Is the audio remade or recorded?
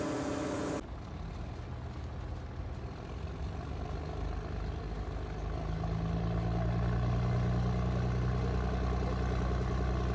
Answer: recorded